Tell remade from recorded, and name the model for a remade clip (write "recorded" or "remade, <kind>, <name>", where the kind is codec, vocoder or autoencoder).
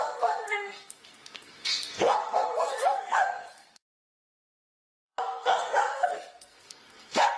remade, codec, SNAC